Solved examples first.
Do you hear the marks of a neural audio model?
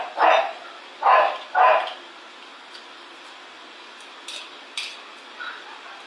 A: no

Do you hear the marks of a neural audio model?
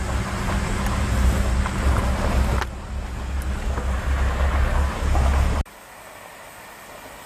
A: no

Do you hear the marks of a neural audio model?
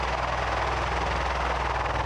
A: no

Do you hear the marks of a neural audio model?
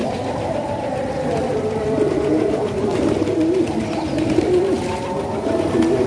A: no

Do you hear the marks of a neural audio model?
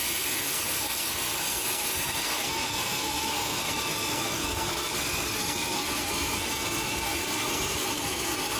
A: yes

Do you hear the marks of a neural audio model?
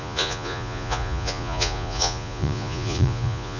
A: yes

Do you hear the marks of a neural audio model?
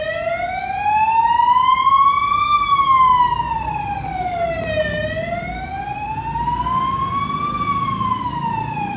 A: no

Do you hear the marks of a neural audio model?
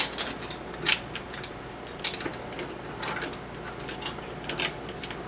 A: no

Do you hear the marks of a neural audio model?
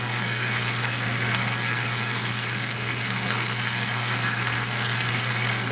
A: yes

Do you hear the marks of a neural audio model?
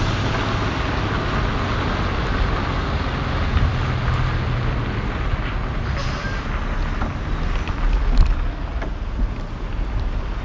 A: no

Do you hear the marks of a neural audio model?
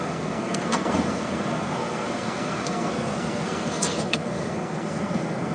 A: yes